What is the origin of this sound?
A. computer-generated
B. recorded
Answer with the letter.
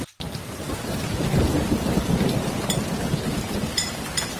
A